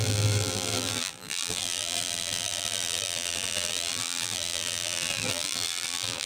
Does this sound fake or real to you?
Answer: fake